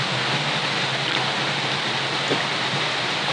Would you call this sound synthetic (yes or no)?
no